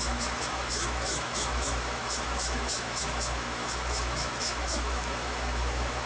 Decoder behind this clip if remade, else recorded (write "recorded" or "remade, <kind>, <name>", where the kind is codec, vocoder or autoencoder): remade, autoencoder, DAC-VAE